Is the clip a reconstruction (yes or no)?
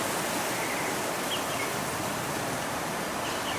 no